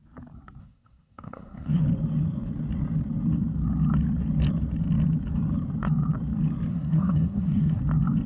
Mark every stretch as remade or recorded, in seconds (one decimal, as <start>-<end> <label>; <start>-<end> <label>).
0.0-0.6 recorded; 0.6-1.8 remade; 1.8-6.7 recorded; 6.7-7.8 remade; 7.8-8.3 recorded